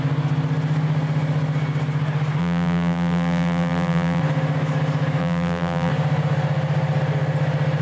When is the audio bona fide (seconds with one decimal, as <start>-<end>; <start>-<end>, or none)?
0.0-2.4; 4.2-5.2; 5.9-7.8